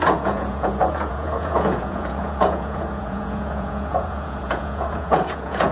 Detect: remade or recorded remade